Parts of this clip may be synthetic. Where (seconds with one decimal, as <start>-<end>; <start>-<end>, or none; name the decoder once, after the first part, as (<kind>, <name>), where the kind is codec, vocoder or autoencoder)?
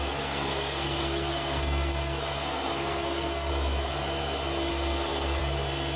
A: 0.0-3.5 (codec, SNAC); 4.7-5.4